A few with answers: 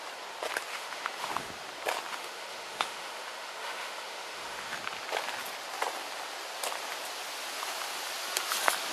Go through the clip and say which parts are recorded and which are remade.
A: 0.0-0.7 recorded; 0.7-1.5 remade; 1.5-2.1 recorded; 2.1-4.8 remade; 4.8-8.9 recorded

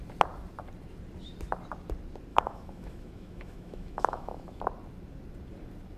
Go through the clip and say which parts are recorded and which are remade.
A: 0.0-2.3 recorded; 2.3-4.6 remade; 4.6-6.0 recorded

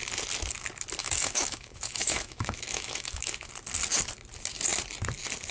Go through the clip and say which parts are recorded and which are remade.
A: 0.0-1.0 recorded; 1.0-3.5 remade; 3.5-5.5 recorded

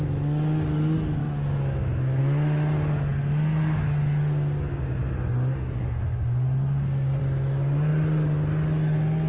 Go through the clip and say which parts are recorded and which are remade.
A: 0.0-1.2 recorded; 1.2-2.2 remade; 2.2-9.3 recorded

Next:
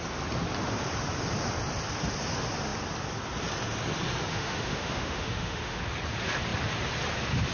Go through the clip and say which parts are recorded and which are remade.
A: 0.0-4.3 recorded; 4.3-5.8 remade; 5.8-7.5 recorded

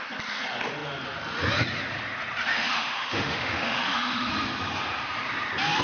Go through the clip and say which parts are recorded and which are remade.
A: 0.0-2.5 recorded; 2.5-4.3 remade; 4.3-5.8 recorded

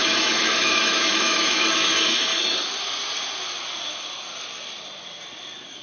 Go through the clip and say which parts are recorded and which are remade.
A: 0.0-2.3 remade; 2.3-5.8 recorded

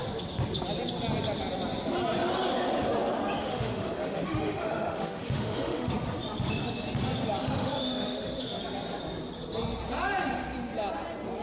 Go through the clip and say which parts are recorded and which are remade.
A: 0.0-3.4 recorded; 3.4-5.9 remade; 5.9-7.4 recorded; 7.4-8.6 remade; 8.6-11.4 recorded